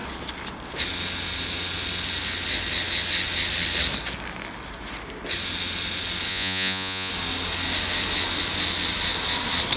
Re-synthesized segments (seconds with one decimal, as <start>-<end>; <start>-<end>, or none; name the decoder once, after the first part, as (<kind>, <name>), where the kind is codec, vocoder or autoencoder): 6.3-7.1 (vocoder, Vocos)